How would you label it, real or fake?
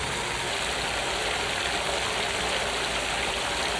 real